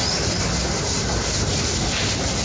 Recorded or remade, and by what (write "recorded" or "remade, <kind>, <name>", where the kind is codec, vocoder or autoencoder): recorded